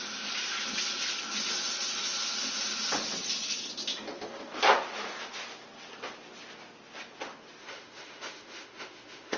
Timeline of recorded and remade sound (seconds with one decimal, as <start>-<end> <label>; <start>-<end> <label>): 0.0-7.6 recorded; 7.6-9.4 remade